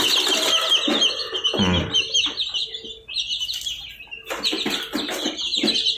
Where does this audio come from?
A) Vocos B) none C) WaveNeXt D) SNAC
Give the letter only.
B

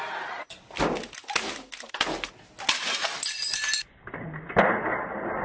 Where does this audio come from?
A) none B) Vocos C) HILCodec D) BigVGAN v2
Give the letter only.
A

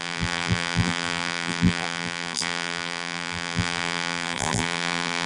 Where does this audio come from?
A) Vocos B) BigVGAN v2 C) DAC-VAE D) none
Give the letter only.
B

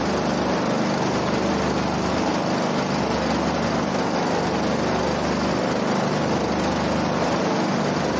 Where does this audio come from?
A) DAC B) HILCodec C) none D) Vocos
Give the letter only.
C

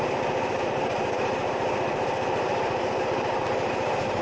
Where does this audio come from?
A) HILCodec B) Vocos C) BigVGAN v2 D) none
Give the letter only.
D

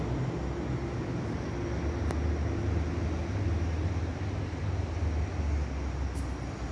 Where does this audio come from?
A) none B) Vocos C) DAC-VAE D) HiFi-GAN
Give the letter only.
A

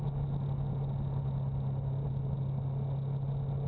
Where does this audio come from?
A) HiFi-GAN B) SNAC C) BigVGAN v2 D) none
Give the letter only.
D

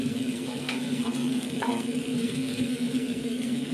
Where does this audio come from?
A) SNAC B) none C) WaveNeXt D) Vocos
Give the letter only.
A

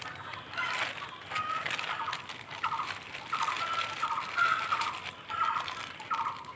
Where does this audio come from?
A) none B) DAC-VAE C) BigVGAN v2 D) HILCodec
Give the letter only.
A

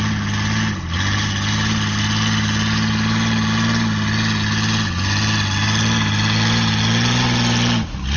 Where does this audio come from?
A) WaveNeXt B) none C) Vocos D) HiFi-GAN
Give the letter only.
B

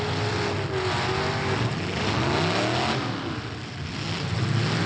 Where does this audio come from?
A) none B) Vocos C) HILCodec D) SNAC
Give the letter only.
A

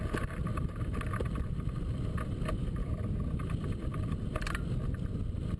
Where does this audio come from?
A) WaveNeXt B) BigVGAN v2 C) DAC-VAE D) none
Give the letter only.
D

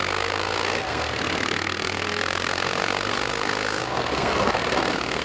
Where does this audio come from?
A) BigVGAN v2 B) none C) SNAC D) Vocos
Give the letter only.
C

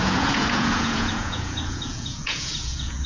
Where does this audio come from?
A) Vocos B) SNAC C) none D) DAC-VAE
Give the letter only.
A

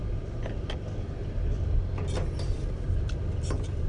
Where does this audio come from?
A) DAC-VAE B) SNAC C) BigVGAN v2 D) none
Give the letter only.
D